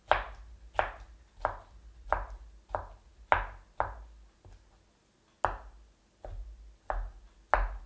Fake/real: real